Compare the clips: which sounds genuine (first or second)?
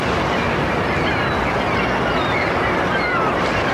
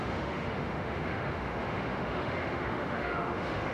first